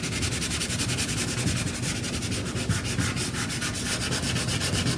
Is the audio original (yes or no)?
yes